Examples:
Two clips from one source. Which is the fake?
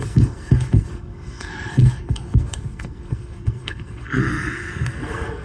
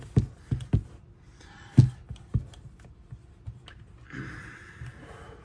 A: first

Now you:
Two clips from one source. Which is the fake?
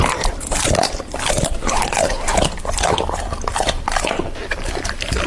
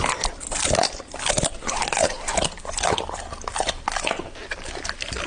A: first